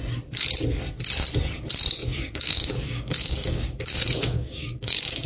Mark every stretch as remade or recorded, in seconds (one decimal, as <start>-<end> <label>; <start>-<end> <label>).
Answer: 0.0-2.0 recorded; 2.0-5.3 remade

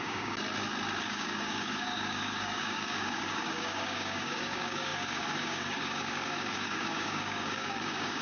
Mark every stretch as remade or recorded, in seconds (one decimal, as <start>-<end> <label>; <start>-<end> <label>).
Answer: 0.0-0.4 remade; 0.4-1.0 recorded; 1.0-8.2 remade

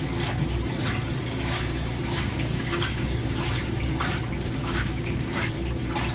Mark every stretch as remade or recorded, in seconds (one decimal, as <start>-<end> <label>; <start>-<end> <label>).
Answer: 0.0-1.2 recorded; 1.2-4.0 remade; 4.0-4.6 recorded; 4.6-5.5 remade; 5.5-6.1 recorded